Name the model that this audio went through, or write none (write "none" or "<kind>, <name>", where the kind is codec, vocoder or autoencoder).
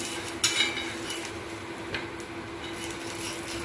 none